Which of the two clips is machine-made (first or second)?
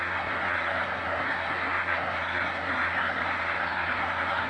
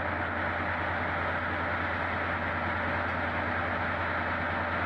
first